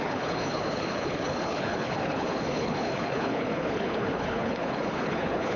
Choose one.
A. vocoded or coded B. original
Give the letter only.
A